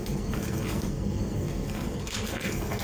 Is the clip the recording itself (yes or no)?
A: no